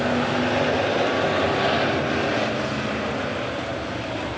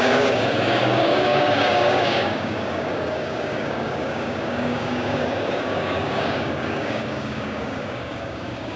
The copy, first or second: second